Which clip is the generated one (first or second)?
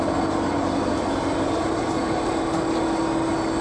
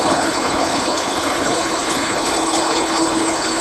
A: second